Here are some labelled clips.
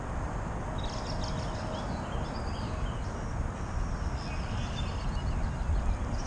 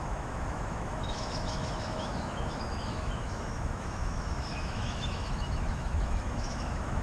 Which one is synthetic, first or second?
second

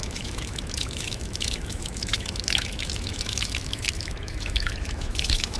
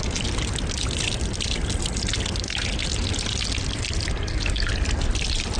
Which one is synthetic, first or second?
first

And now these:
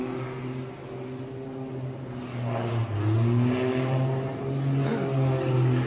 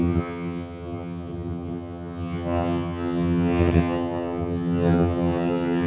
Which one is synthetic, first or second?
second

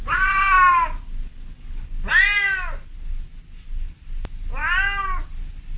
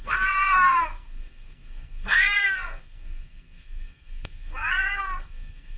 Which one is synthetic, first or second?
second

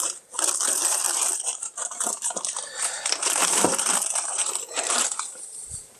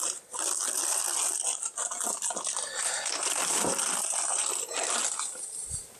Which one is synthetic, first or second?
first